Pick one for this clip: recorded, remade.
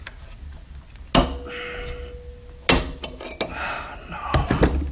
recorded